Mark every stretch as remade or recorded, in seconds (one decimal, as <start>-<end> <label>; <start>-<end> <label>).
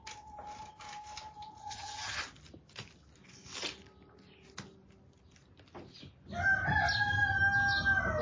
0.0-1.6 recorded; 1.6-2.2 remade; 2.2-8.2 recorded